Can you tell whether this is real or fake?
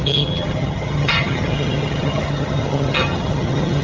fake